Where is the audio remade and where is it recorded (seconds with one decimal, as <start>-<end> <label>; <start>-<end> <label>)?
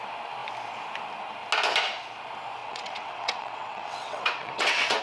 0.0-2.6 recorded; 2.6-5.0 remade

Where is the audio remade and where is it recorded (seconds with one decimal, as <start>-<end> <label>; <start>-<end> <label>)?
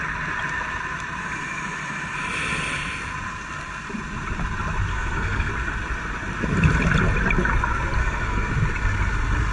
0.0-4.9 recorded; 4.9-5.5 remade; 5.5-8.0 recorded; 8.0-8.5 remade; 8.5-9.5 recorded